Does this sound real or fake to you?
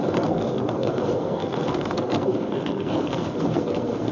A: fake